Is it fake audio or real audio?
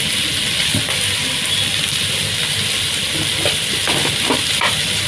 real